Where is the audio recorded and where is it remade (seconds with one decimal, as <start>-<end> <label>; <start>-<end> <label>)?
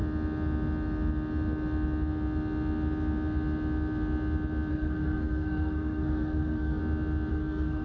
0.0-4.7 recorded; 4.7-6.8 remade; 6.8-7.3 recorded; 7.3-7.8 remade